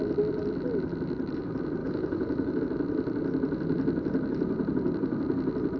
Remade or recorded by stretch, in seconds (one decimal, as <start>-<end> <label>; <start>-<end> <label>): 0.0-1.8 recorded; 1.8-2.6 remade; 2.6-5.8 recorded